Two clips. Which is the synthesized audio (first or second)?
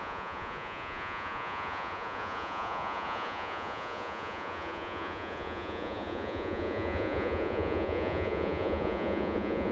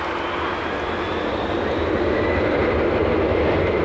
first